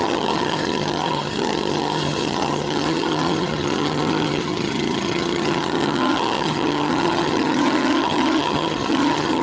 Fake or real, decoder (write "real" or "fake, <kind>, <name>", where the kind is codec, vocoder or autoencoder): fake, vocoder, HiFi-GAN